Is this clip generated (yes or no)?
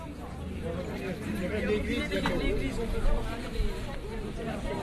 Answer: no